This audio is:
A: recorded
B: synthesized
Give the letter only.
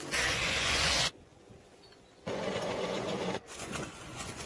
B